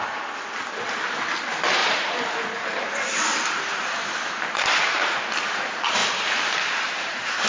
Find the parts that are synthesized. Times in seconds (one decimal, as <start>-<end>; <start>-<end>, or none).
1.8-5.2; 6.0-7.5